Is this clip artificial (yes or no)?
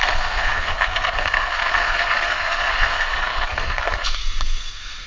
yes